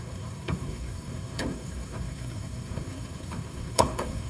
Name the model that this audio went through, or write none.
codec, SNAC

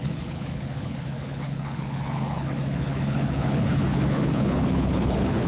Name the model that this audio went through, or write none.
codec, HILCodec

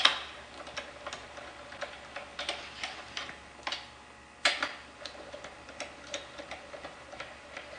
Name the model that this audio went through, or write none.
none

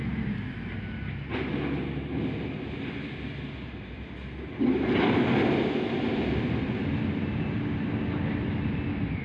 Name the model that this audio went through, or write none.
none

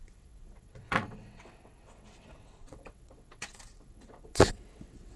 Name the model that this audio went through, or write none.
vocoder, WaveNeXt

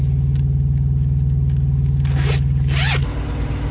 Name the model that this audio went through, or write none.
none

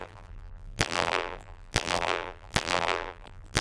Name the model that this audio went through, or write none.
vocoder, BigVGAN v2